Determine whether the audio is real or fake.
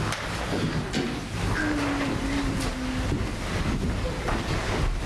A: real